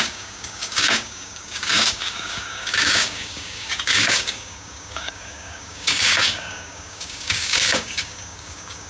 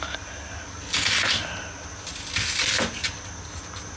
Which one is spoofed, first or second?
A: first